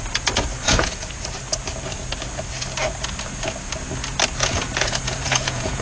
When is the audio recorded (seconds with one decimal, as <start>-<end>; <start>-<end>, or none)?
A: 0.0-0.6; 1.1-4.4